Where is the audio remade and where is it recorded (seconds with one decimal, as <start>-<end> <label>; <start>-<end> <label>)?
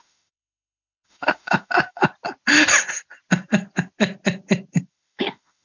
0.0-2.1 remade; 2.1-4.9 recorded; 4.9-5.6 remade